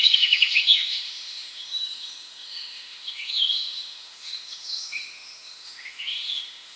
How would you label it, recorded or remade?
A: remade